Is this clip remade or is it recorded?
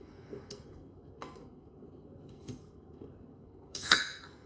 remade